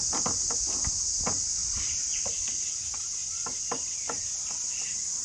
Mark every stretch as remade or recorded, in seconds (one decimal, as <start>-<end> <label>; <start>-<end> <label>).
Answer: 0.0-1.6 recorded; 1.6-2.2 remade; 2.2-3.2 recorded; 3.2-4.3 remade; 4.3-5.2 recorded